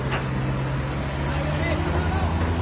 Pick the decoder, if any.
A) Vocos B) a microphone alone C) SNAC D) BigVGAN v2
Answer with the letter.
B